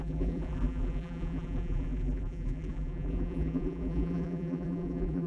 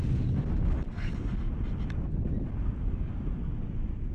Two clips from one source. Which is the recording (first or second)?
second